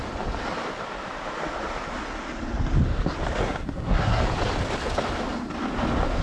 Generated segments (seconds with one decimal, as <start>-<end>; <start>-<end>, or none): 3.4-4.2